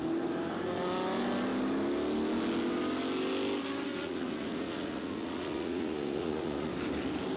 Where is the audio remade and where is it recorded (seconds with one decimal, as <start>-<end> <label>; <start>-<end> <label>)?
0.0-3.9 recorded; 3.9-6.7 remade; 6.7-7.4 recorded